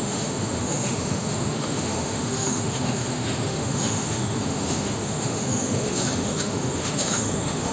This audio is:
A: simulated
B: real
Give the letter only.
A